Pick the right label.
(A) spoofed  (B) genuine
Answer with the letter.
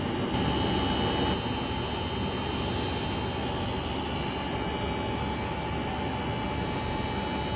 B